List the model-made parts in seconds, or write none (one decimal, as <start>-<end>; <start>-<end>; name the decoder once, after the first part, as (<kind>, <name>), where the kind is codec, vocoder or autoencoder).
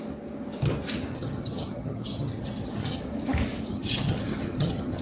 1.1-3.0 (vocoder, HiFi-GAN); 3.7-5.0